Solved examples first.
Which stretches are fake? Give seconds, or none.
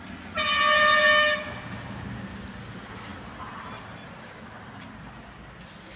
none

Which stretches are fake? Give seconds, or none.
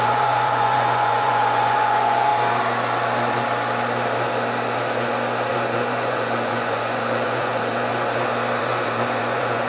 0.0-2.3; 5.5-7.9; 8.6-9.7